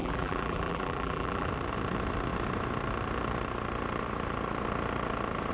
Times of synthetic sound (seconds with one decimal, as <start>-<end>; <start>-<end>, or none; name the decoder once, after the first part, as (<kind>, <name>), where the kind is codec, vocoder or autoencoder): 0.0-1.5 (vocoder, BigVGAN v2)

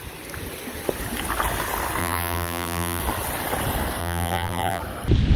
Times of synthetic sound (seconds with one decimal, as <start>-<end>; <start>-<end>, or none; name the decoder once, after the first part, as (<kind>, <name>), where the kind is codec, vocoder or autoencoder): 2.0-3.0 (vocoder, BigVGAN v2); 4.0-4.8

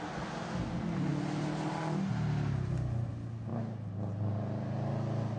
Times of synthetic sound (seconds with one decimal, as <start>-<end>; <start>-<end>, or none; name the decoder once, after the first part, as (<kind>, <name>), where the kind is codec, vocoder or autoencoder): none

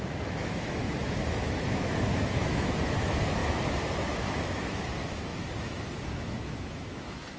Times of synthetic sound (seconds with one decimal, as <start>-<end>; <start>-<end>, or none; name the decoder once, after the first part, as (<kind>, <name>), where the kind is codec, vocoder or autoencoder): 0.0-7.4 (autoencoder, DAC-VAE)

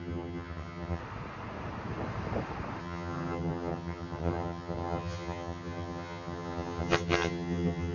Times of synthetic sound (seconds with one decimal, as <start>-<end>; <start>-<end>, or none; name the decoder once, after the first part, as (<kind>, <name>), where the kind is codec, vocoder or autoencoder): 0.0-1.0 (vocoder, HiFi-GAN); 2.8-7.9

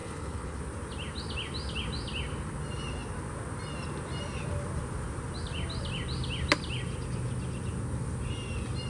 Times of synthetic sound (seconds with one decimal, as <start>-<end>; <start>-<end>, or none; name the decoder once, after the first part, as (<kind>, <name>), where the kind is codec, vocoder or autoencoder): 0.0-0.6 (codec, HILCodec)

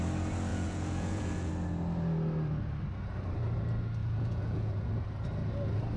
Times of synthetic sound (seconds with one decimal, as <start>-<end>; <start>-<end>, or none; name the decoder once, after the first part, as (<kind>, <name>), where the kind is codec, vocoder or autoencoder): 0.5-1.5 (vocoder, Vocos); 4.0-4.9